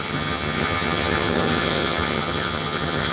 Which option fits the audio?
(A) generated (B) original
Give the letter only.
A